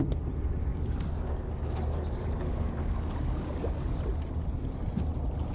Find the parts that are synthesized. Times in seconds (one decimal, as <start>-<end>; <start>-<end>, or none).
0.7-4.0